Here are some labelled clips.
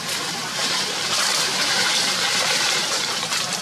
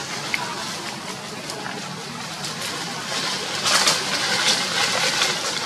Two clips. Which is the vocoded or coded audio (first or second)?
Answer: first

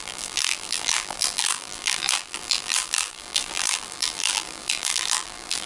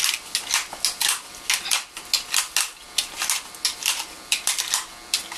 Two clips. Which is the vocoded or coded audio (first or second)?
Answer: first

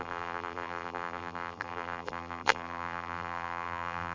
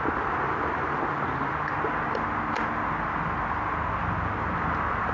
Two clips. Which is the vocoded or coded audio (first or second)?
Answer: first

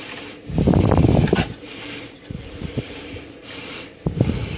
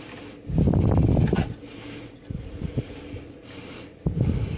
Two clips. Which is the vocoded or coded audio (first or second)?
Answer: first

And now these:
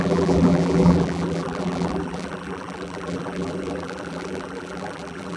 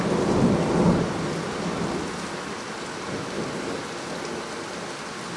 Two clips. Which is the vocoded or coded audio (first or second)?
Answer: first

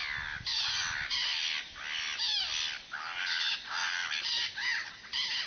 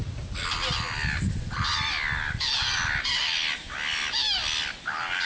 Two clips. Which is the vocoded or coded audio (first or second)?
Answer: first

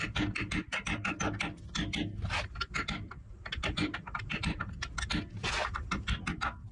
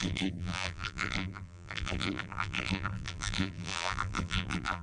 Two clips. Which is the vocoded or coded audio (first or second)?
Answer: second